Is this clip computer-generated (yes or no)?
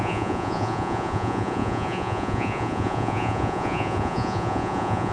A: yes